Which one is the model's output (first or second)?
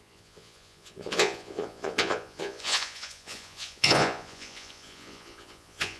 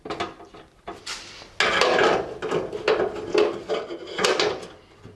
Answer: first